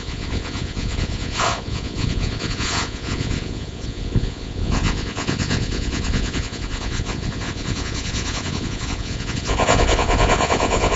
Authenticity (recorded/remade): remade